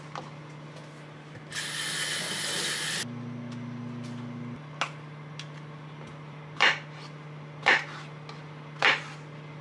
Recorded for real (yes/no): yes